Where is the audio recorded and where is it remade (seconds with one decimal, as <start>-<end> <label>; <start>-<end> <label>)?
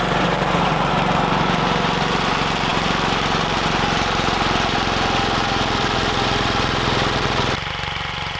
0.0-8.4 remade